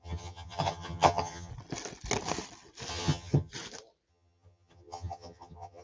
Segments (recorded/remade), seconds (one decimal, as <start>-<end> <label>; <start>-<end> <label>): 0.0-1.5 remade; 1.5-2.9 recorded; 2.9-3.5 remade; 3.5-4.1 recorded; 4.1-5.8 remade